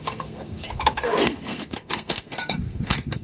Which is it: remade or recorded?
remade